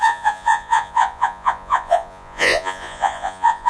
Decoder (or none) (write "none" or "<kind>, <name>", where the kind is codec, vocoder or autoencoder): vocoder, Vocos